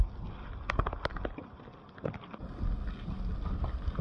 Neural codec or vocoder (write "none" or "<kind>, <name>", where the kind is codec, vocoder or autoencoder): none